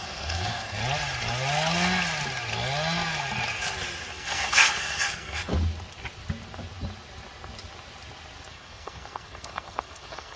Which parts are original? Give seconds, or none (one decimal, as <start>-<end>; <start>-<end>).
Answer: 0.8-4.1; 5.5-8.5